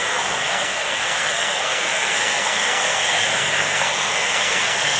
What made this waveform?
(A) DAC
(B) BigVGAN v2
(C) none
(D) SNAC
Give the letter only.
D